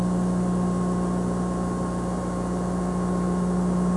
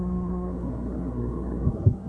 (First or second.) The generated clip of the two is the second